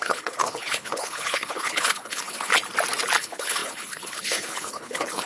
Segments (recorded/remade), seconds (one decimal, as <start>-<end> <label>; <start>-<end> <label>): 0.0-2.5 remade; 2.5-3.2 recorded; 3.2-5.3 remade